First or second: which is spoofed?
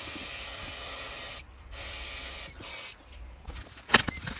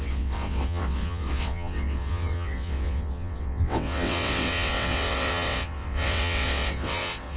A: second